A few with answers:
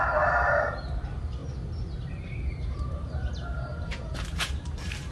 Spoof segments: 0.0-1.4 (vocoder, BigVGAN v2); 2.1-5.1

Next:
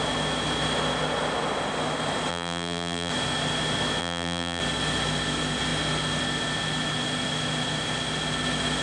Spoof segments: 2.3-3.1 (vocoder, BigVGAN v2); 4.0-4.6

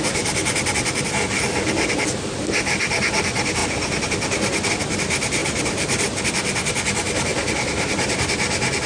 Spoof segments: none

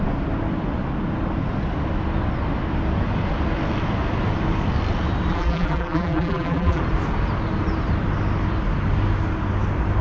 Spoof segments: 5.3-6.8 (vocoder, BigVGAN v2)

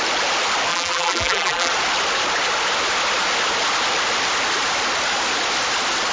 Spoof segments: 0.7-1.7 (vocoder, BigVGAN v2)

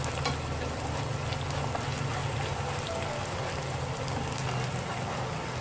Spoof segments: 2.2-3.6 (vocoder, BigVGAN v2)

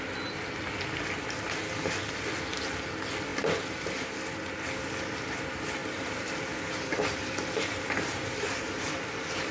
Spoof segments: 5.8-9.0 (vocoder, BigVGAN v2)